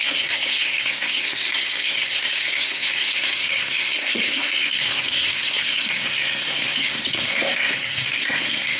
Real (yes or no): no